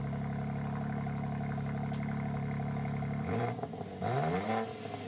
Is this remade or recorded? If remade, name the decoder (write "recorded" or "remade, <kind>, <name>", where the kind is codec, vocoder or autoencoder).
recorded